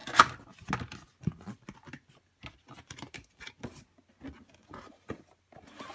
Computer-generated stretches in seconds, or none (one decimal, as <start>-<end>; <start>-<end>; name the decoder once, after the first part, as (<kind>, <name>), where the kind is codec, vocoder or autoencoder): 4.6-5.2 (vocoder, Vocos)